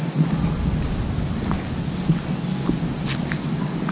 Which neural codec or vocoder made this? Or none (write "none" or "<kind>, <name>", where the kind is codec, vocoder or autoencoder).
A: none